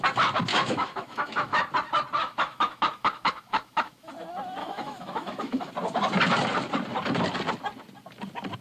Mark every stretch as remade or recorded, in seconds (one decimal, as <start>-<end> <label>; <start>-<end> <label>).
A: 0.0-0.5 recorded; 0.5-1.6 remade; 1.6-2.2 recorded; 2.2-4.1 remade; 4.1-4.6 recorded; 4.6-5.7 remade; 5.7-8.6 recorded